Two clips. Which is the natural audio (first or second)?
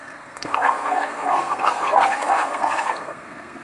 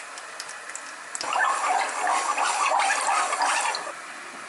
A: second